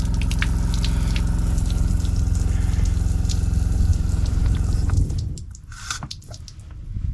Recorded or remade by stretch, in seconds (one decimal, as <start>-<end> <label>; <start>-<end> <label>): 0.0-3.9 recorded; 3.9-6.6 remade; 6.6-7.1 recorded